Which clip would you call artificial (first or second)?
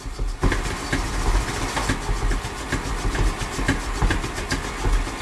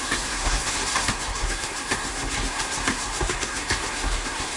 second